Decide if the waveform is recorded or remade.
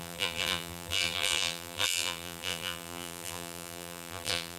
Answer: remade